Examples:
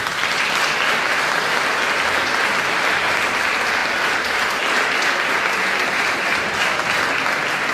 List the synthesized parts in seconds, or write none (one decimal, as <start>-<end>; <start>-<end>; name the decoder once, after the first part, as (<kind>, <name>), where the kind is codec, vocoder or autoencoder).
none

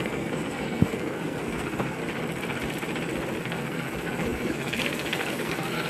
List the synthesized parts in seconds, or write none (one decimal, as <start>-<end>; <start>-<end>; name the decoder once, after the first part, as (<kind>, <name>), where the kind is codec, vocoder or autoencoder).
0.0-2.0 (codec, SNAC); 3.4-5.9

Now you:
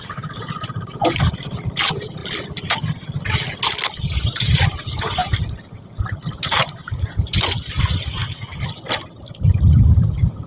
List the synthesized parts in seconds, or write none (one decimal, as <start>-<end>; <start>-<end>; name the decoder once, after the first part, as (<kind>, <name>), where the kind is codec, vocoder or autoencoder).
0.0-2.2 (vocoder, BigVGAN v2); 4.1-8.2; 9.1-10.5

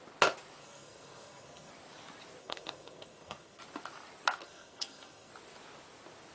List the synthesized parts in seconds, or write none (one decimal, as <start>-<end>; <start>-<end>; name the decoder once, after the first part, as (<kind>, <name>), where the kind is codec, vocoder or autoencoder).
0.6-1.7 (codec, SNAC); 2.4-3.6; 4.4-5.3

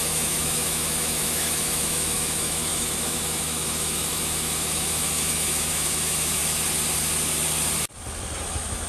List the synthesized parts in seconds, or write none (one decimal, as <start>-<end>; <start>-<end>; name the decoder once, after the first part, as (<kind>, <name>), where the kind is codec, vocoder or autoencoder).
0.0-6.4 (autoencoder, DAC-VAE); 8.4-8.9

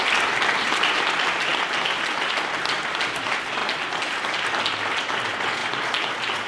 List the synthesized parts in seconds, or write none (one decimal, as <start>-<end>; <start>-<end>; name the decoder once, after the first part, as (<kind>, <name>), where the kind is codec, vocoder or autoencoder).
none